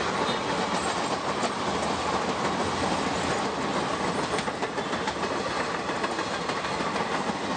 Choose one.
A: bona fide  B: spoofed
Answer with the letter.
A